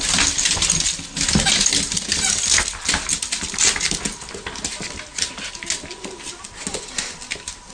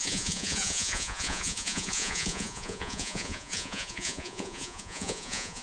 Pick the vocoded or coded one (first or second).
second